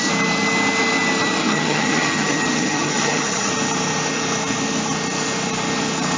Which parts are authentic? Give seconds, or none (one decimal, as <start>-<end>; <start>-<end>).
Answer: 0.0-1.4; 3.5-6.2